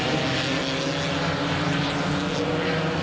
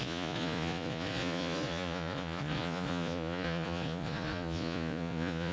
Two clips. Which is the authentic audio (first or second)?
first